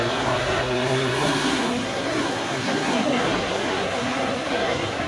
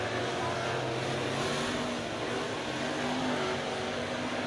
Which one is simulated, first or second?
first